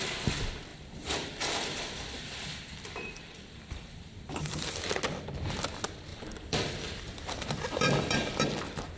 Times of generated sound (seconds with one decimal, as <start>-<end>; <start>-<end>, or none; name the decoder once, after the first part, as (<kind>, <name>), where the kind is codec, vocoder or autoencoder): 0.7-4.7 (vocoder, BigVGAN v2); 6.1-9.0